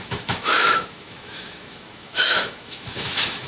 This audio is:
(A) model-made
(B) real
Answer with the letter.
A